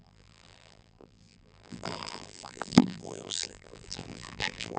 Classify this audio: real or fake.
fake